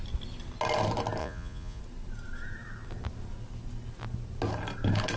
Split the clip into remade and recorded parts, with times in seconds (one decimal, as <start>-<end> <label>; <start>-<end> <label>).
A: 0.0-1.2 recorded; 1.2-1.8 remade; 1.8-5.2 recorded